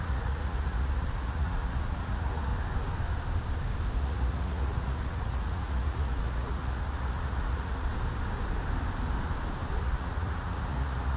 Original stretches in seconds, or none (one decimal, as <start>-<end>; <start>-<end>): 2.5-4.0; 7.9-9.8